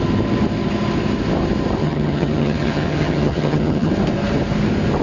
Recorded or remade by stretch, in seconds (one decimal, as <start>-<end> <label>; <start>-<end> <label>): 0.0-1.8 recorded; 1.8-3.9 remade; 3.9-5.0 recorded